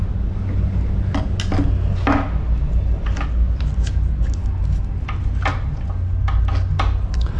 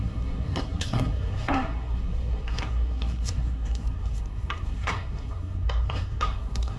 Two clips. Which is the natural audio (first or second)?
first